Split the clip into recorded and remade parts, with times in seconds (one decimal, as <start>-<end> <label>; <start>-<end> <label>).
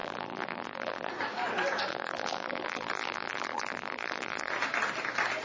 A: 0.0-1.1 remade; 1.1-1.9 recorded; 1.9-4.5 remade; 4.5-5.4 recorded